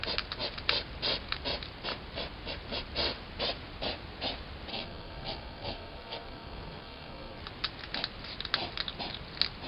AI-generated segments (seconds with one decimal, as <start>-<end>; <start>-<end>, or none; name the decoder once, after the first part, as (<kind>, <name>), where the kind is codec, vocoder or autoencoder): 4.7-7.4 (codec, SNAC)